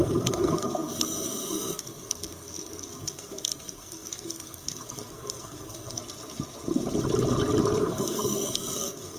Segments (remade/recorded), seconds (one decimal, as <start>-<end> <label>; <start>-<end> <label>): 0.0-6.0 remade; 6.0-7.8 recorded; 7.8-9.2 remade

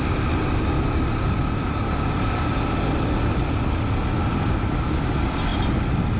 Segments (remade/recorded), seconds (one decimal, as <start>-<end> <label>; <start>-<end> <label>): 0.0-6.2 recorded

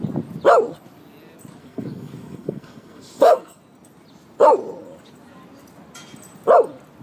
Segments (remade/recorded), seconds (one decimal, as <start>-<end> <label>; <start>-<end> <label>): 0.0-1.6 recorded; 1.6-3.6 remade; 3.6-7.0 recorded

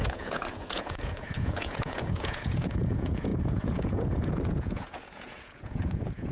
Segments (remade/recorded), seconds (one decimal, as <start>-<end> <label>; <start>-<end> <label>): 0.0-6.3 remade

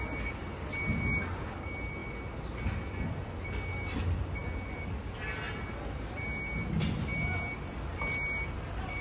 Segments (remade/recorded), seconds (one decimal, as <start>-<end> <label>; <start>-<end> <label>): 0.0-9.0 recorded

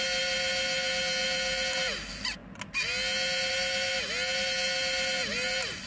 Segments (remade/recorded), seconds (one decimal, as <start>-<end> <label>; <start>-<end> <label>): 0.0-5.9 recorded

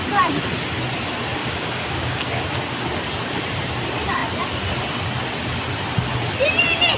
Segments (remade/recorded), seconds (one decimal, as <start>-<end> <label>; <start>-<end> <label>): 0.0-1.4 recorded; 1.4-2.4 remade; 2.4-7.0 recorded

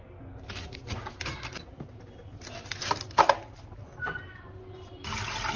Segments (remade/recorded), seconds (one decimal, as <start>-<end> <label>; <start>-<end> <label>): 0.0-5.6 recorded